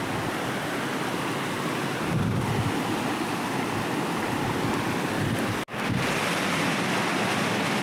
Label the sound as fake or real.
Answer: real